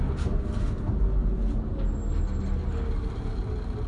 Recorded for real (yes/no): yes